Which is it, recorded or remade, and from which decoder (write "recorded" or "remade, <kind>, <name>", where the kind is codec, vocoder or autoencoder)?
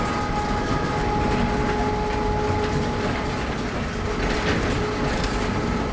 recorded